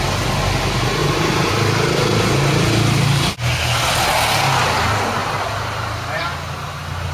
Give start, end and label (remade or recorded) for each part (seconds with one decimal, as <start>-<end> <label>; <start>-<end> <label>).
0.0-1.0 recorded; 1.0-1.5 remade; 1.5-5.2 recorded; 5.2-6.2 remade; 6.2-7.1 recorded